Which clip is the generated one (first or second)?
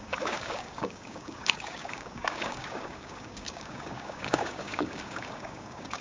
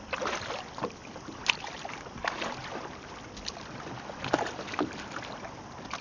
first